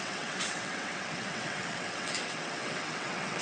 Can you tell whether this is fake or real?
fake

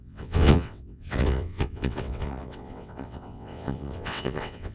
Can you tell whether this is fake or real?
fake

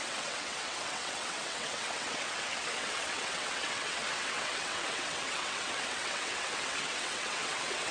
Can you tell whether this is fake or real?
fake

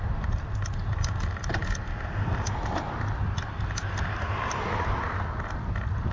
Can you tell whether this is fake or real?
real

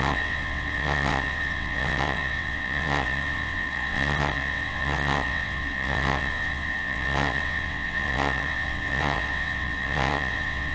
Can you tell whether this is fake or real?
fake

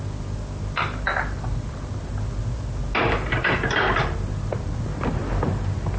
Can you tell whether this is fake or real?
real